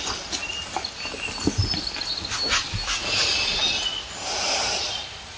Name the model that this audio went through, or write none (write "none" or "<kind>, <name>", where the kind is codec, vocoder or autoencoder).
none